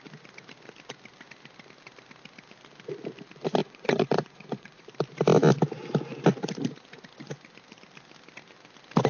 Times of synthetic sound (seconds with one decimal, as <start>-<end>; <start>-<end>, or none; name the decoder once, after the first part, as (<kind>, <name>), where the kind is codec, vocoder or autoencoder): 3.6-4.8 (vocoder, Vocos)